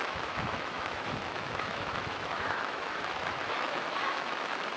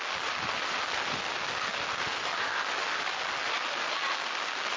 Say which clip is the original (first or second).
second